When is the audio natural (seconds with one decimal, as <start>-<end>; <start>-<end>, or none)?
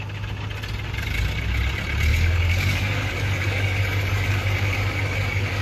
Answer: 0.0-2.1